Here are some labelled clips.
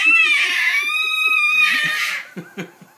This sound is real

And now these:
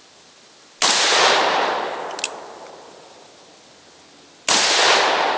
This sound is real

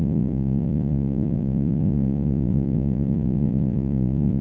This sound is fake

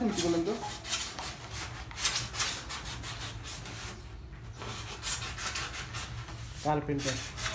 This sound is real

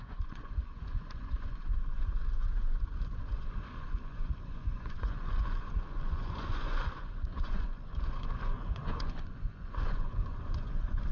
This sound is fake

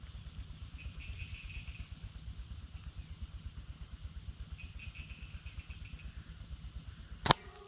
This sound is real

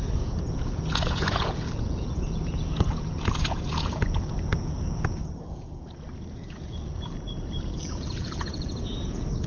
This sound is fake